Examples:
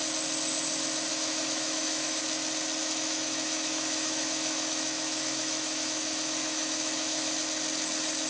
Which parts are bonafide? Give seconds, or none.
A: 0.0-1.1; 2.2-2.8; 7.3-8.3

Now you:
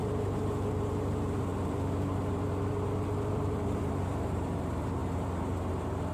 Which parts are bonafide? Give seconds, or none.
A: none

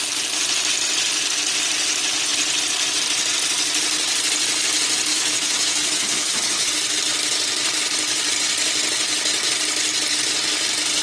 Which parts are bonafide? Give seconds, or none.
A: 0.0-5.1; 6.7-11.0

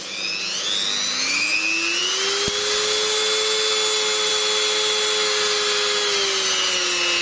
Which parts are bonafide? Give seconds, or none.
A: 0.0-7.2

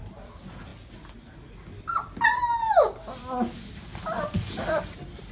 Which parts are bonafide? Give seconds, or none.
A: 0.0-5.3